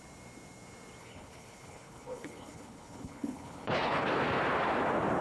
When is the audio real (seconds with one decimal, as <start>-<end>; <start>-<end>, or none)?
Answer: 0.0-1.0; 4.1-5.2